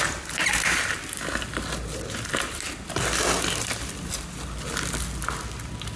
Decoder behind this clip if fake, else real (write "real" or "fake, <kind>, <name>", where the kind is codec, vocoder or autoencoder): real